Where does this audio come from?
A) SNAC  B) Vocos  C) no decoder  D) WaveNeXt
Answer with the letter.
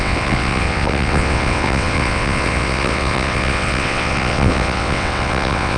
D